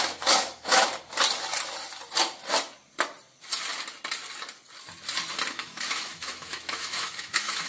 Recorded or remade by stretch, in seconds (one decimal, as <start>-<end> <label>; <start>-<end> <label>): 0.0-0.9 remade; 0.9-5.5 recorded; 5.5-7.7 remade